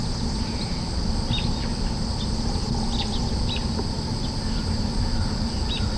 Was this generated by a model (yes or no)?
no